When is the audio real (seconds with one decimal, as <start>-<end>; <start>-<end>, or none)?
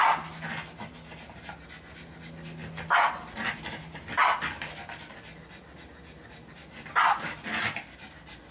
0.0-8.5